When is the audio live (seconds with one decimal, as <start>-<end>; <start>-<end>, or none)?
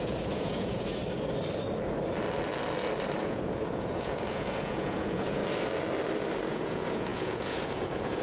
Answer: 1.0-3.2; 5.4-6.5